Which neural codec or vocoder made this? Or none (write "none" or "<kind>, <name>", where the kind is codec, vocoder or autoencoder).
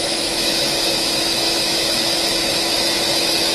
autoencoder, DAC-VAE